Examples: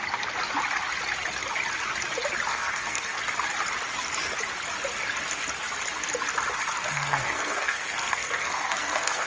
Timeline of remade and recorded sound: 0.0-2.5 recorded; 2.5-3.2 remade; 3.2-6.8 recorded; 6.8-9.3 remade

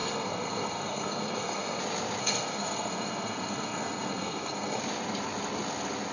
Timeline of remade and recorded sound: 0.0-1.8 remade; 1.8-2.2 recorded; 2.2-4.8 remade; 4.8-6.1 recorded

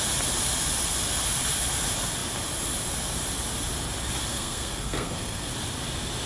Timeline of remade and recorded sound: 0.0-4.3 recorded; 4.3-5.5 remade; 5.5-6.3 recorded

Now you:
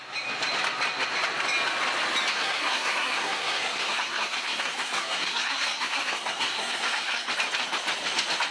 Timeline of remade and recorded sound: 0.0-2.3 recorded; 2.3-7.3 remade; 7.3-8.5 recorded

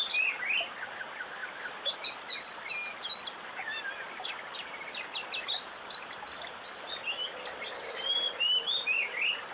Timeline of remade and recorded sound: 0.0-9.5 recorded

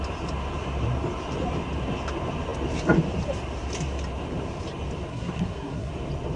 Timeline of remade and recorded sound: 0.0-5.1 recorded; 5.1-5.9 remade; 5.9-6.4 recorded

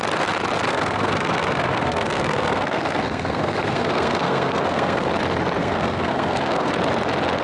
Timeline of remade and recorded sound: 0.0-0.7 recorded; 0.7-5.1 remade; 5.1-5.6 recorded; 5.6-6.7 remade; 6.7-7.4 recorded

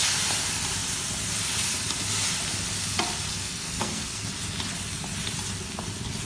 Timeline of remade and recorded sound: 0.0-3.3 recorded; 3.3-4.3 remade; 4.3-6.3 recorded